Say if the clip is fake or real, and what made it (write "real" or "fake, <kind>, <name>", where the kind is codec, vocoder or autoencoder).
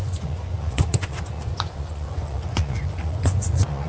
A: fake, vocoder, Vocos